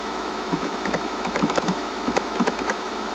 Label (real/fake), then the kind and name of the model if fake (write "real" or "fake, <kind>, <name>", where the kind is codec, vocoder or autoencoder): fake, autoencoder, DAC-VAE